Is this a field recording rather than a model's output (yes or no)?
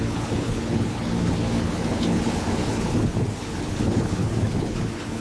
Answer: no